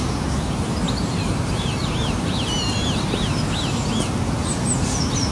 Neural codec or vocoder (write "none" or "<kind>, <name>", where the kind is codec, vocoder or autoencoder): none